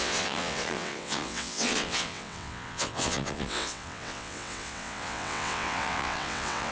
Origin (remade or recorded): remade